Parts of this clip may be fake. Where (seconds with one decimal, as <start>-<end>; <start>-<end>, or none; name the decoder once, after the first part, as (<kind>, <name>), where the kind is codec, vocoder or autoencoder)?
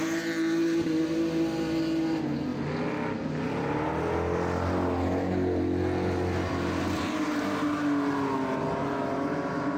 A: none